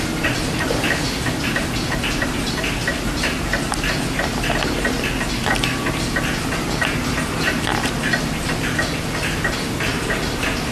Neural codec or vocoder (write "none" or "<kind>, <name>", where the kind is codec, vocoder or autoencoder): none